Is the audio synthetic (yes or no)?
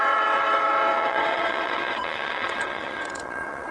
yes